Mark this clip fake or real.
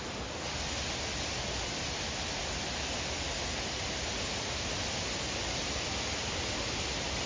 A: real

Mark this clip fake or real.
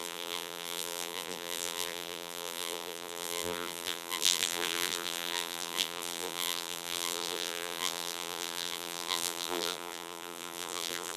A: fake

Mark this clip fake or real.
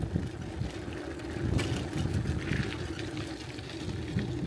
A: real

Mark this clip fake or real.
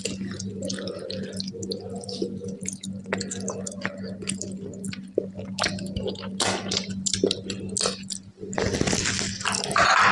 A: real